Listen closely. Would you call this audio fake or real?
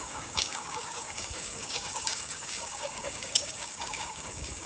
fake